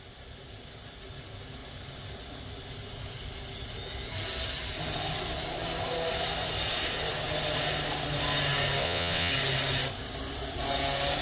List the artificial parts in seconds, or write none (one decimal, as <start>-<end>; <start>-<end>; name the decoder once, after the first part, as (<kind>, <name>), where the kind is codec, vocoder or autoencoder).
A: 8.8-9.3 (vocoder, WaveNeXt)